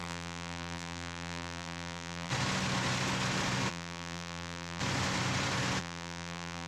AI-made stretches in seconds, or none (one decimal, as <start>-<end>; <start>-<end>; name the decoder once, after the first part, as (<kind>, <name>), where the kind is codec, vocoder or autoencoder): 0.0-2.3 (vocoder, BigVGAN v2); 3.7-4.8; 5.8-6.7